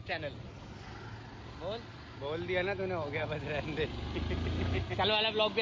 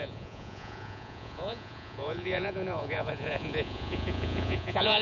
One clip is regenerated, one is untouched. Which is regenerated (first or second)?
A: second